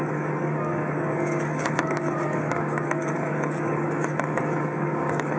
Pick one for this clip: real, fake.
fake